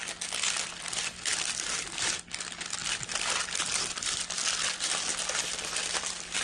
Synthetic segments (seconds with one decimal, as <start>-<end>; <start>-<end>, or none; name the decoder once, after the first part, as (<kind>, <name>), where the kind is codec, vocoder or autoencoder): none